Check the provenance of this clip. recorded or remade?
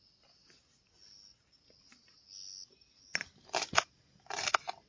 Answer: recorded